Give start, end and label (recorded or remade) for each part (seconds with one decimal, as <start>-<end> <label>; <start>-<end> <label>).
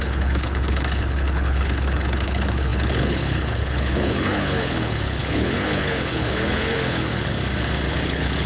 0.0-7.3 remade; 7.3-7.9 recorded; 7.9-8.5 remade